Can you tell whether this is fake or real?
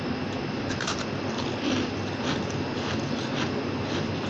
real